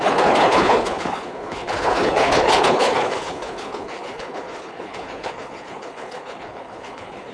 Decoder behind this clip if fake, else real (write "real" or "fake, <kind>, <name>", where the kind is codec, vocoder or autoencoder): fake, codec, HILCodec